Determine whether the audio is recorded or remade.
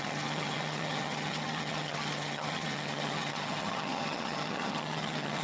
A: remade